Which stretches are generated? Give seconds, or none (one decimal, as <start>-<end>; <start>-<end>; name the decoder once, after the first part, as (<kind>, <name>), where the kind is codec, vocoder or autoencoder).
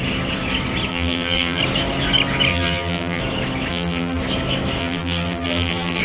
0.9-1.6 (vocoder, BigVGAN v2); 2.5-3.2; 3.7-4.2; 4.8-6.0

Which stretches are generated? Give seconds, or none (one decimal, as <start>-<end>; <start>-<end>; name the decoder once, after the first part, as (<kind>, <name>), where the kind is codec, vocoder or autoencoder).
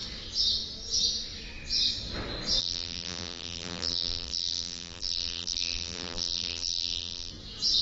2.6-7.3 (vocoder, BigVGAN v2)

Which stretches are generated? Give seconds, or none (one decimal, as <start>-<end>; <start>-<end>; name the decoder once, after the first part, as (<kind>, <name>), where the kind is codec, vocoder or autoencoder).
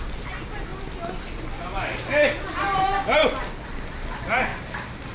none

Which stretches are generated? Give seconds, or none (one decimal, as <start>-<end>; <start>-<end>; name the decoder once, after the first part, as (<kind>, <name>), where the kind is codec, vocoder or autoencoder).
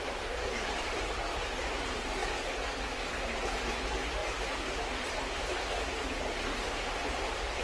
0.0-2.2 (vocoder, BigVGAN v2); 3.5-4.2; 6.7-7.6